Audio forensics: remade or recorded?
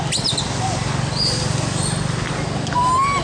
recorded